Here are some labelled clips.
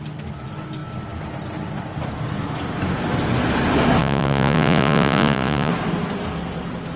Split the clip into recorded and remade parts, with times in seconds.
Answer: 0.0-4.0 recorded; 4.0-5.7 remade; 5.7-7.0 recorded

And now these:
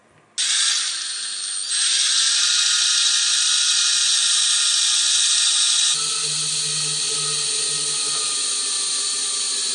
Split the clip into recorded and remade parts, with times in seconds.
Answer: 0.0-9.7 recorded